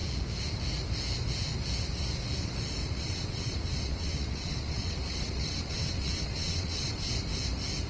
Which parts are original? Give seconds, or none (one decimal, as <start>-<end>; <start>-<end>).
0.0-2.8; 7.1-7.9